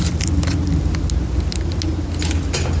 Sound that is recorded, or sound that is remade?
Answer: recorded